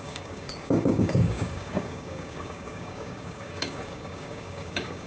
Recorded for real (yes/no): no